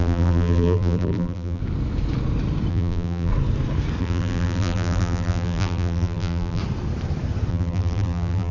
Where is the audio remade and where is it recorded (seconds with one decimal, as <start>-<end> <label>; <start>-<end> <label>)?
0.0-1.6 remade; 1.6-2.7 recorded; 2.7-3.3 remade; 3.3-4.0 recorded; 4.0-6.6 remade; 6.6-7.5 recorded; 7.5-8.5 remade